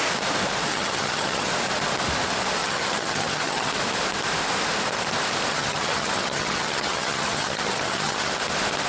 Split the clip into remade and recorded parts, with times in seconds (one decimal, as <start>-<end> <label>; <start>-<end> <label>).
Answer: 0.0-0.7 recorded; 0.7-1.5 remade; 1.5-2.6 recorded; 2.6-3.7 remade; 3.7-5.5 recorded; 5.5-8.3 remade; 8.3-8.9 recorded